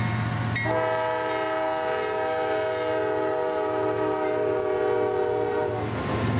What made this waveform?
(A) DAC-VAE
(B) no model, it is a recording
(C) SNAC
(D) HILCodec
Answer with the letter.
B